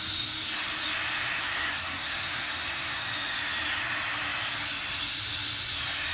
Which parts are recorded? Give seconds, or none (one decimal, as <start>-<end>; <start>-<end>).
0.0-1.4; 3.0-6.1